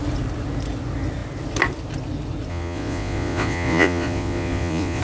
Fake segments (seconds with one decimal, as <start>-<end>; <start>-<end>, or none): 2.5-5.0